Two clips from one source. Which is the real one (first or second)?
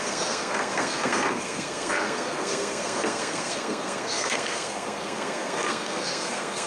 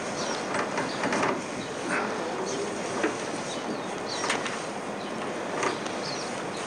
second